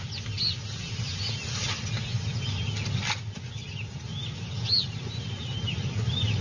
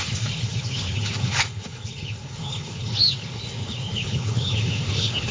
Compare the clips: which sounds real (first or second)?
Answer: first